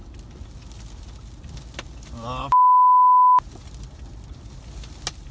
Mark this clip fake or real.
real